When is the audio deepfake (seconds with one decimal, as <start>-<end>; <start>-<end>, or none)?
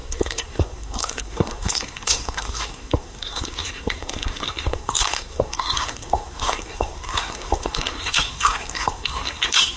0.0-9.8